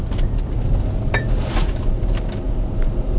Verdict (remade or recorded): recorded